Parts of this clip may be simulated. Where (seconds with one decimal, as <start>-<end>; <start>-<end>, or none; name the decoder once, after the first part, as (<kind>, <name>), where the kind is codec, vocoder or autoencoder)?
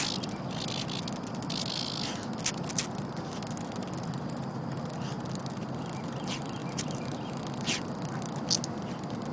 6.6-7.4 (vocoder, BigVGAN v2)